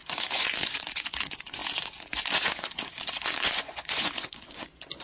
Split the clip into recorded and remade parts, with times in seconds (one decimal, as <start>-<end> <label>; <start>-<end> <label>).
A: 0.0-5.0 remade